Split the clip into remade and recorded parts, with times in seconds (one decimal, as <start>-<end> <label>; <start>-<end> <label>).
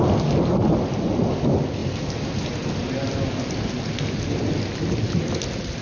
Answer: 0.0-5.8 recorded